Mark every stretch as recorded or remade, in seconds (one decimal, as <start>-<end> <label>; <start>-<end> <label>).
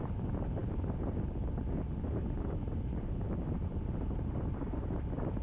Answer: 0.0-5.4 recorded